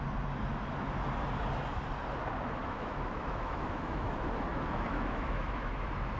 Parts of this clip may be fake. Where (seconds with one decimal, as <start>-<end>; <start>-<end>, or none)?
2.6-4.1; 4.5-5.7